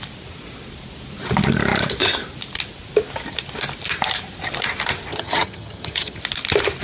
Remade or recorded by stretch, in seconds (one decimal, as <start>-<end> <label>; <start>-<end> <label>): 0.0-5.1 recorded; 5.1-6.2 remade; 6.2-6.8 recorded